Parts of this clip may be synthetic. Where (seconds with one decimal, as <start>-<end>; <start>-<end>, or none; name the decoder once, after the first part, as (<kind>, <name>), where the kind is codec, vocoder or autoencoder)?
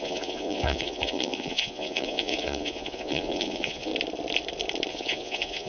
0.0-3.9 (vocoder, Vocos); 4.9-5.7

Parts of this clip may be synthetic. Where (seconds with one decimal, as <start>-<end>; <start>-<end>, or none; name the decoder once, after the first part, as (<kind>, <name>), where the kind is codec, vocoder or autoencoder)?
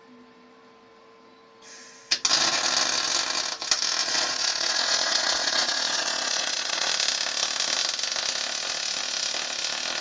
4.0-6.9 (vocoder, Vocos)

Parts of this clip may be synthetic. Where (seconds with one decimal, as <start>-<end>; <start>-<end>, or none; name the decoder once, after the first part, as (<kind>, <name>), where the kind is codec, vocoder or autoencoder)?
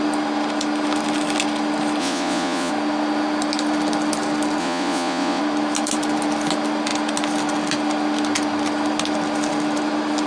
2.0-2.7 (vocoder, Vocos); 4.6-5.4